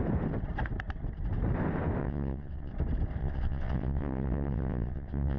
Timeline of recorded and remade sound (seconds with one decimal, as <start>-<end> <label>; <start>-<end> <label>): 0.0-2.0 recorded; 2.0-2.7 remade; 2.7-3.2 recorded; 3.2-5.4 remade

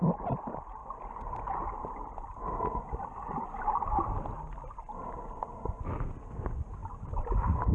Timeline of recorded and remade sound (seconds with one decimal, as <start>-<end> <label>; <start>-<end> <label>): 0.0-7.7 recorded